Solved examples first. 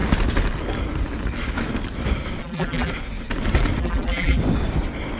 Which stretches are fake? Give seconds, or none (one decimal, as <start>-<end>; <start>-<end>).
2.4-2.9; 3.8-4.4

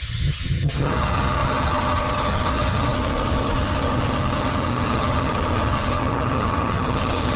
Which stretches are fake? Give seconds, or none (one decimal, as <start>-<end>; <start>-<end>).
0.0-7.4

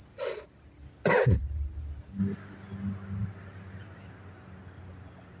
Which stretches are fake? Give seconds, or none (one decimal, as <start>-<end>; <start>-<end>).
none